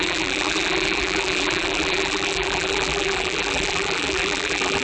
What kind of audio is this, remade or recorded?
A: remade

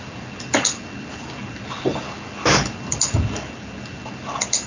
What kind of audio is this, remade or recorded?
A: recorded